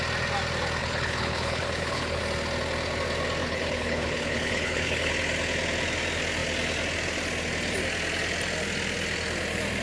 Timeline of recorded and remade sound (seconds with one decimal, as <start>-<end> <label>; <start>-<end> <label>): 0.0-0.8 recorded; 0.8-2.2 remade; 2.2-3.4 recorded; 3.4-5.1 remade; 5.1-9.8 recorded